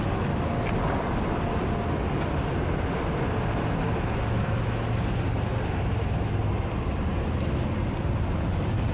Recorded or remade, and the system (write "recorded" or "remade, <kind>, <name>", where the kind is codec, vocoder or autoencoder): recorded